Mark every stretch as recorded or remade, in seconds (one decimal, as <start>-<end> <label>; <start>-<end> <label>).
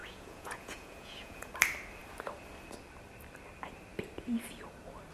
0.0-1.5 remade; 1.5-5.1 recorded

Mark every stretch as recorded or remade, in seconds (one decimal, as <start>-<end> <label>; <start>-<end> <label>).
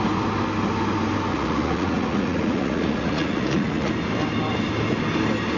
0.0-1.3 recorded; 1.3-3.9 remade; 3.9-5.6 recorded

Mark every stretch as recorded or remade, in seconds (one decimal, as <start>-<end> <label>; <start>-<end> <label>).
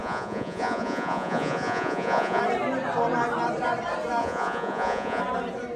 0.0-2.4 remade; 2.4-4.2 recorded; 4.2-5.2 remade; 5.2-5.8 recorded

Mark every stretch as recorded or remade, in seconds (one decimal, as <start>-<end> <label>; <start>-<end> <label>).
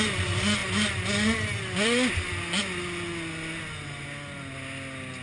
0.0-5.2 recorded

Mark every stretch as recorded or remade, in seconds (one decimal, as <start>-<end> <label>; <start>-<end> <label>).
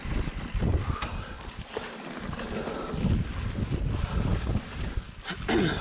0.0-5.8 recorded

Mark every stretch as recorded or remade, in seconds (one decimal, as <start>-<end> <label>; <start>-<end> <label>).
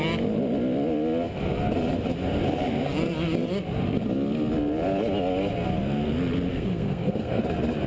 0.0-6.5 recorded; 6.5-7.4 remade; 7.4-7.9 recorded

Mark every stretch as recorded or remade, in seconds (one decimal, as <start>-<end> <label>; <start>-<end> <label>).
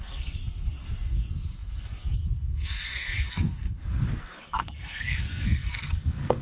0.0-6.4 remade